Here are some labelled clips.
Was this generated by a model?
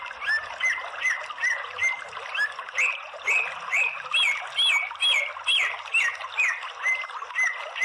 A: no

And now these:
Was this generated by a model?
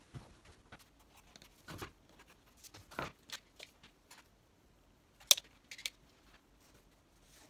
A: no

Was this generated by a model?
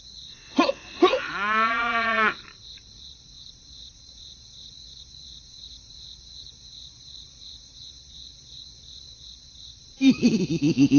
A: yes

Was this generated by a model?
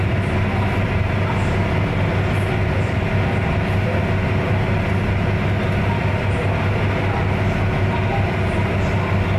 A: no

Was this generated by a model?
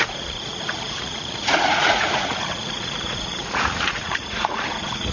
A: yes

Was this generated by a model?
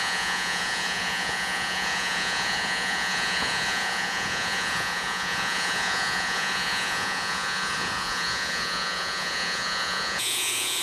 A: yes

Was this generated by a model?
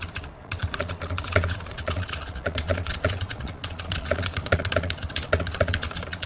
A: yes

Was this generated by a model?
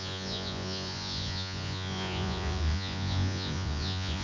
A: yes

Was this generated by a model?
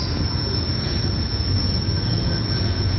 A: yes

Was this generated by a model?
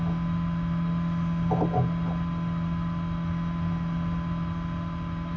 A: no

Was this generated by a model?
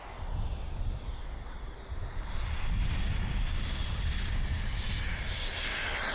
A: no